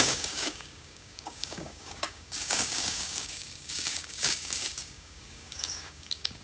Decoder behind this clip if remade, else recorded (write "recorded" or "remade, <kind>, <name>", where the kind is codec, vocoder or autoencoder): remade, codec, DAC